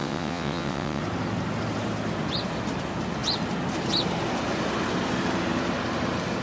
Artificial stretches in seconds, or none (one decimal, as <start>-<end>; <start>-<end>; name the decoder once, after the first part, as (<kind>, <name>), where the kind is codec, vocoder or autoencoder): 0.0-1.0 (vocoder, WaveNeXt)